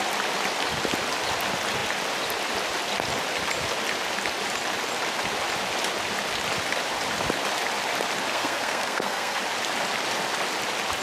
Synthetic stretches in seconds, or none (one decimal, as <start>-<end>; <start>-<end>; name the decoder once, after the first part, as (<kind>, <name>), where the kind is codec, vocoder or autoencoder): 8.3-9.4 (codec, SNAC)